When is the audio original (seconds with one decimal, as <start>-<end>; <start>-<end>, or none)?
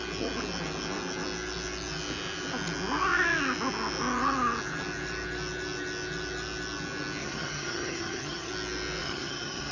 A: 0.0-7.2; 8.5-9.0